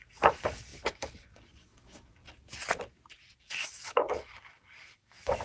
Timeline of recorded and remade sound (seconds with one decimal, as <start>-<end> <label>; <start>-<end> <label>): 0.0-2.2 remade; 2.2-3.4 recorded; 3.4-5.4 remade